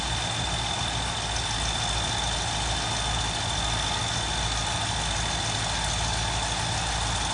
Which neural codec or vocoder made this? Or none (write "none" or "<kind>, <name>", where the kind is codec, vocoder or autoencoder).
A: none